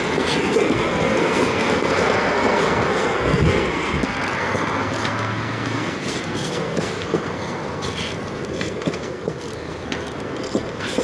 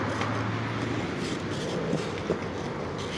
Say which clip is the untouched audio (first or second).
second